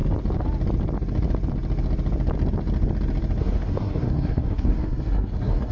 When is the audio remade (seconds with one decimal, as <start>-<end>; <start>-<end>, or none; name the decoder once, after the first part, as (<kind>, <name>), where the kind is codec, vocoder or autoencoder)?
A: 3.4-5.7 (codec, SNAC)